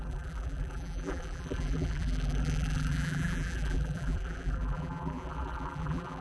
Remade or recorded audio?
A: remade